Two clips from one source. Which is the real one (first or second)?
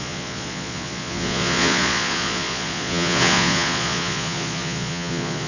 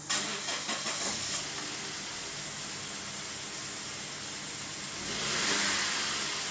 second